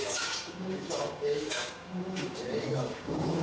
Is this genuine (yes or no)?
no